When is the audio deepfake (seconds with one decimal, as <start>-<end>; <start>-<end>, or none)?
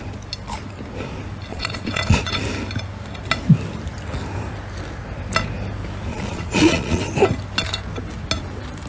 1.5-2.4; 6.1-7.0